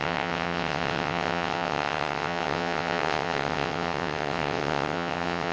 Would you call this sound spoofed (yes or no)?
yes